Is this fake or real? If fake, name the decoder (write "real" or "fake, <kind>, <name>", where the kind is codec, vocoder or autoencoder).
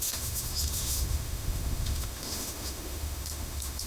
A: fake, autoencoder, DAC-VAE